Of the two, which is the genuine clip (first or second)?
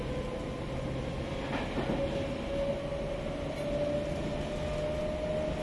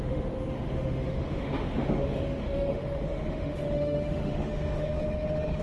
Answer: first